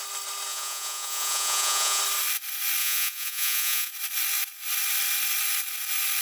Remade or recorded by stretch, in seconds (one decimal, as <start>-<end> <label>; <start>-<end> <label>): 0.0-0.5 recorded; 0.5-2.0 remade; 2.0-2.8 recorded; 2.8-3.9 remade; 3.9-6.2 recorded